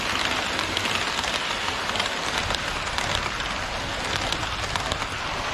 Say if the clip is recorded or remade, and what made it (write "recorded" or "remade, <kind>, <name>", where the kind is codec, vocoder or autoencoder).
recorded